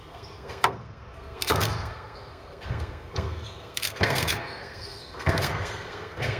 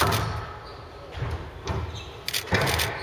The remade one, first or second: first